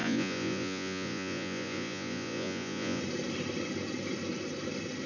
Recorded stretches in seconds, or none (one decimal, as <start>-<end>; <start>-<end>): 3.0-5.1